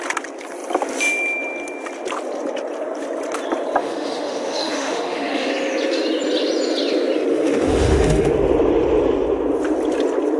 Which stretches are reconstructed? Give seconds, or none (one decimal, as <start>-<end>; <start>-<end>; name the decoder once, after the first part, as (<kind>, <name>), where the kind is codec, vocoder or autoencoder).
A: 3.8-5.5 (autoencoder, DAC-VAE); 7.3-8.3

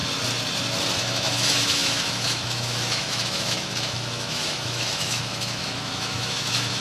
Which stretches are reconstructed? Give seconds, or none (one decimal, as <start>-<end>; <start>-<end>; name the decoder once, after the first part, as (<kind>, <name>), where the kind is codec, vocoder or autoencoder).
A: 1.0-6.8 (autoencoder, DAC-VAE)

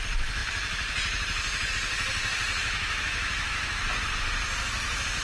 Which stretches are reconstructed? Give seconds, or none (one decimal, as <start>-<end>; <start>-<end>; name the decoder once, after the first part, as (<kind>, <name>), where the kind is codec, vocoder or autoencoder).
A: 2.6-3.8 (autoencoder, DAC-VAE)

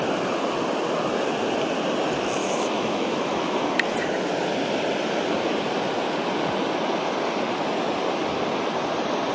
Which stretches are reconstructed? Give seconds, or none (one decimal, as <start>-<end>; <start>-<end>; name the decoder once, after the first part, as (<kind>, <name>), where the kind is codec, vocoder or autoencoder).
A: 2.4-3.6 (autoencoder, DAC-VAE)